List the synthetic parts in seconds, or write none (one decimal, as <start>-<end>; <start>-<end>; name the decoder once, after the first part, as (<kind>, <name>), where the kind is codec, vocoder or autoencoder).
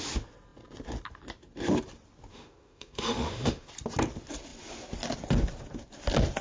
2.3-3.7 (autoencoder, DAC-VAE)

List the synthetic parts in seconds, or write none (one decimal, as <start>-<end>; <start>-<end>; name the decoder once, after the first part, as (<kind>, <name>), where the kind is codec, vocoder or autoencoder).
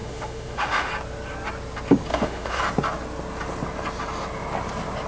0.0-0.9 (autoencoder, DAC-VAE); 2.1-2.6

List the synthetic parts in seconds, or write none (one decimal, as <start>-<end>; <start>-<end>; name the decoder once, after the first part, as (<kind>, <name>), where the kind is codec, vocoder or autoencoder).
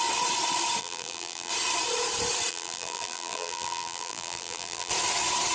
0.8-1.5 (vocoder, BigVGAN v2); 2.5-4.9